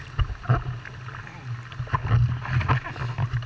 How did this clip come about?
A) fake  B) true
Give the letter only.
B